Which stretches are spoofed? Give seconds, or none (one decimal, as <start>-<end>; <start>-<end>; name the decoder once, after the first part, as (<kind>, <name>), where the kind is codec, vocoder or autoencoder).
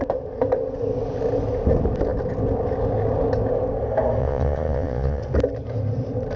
4.2-5.2 (vocoder, Vocos)